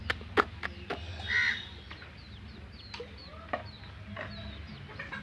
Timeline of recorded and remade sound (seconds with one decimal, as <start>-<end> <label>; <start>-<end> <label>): 0.0-5.2 recorded